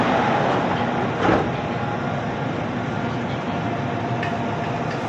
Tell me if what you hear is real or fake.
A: real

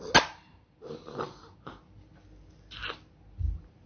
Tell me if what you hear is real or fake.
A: real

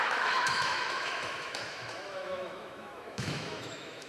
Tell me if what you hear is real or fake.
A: fake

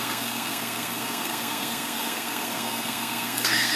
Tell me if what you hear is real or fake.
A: fake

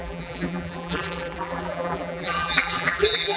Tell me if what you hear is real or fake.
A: fake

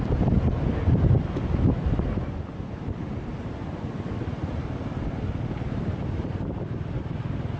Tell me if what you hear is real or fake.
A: real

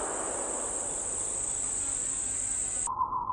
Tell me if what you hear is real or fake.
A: real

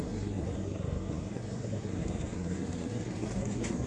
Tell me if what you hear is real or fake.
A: fake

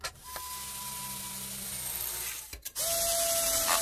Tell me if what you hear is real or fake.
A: real